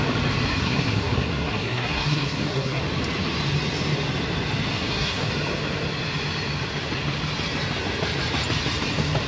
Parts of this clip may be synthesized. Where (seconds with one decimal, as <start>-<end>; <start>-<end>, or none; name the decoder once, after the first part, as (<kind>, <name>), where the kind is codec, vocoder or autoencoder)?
0.6-2.8 (codec, SNAC); 4.7-5.3